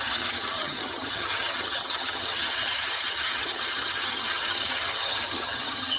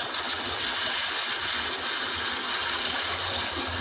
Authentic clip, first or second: second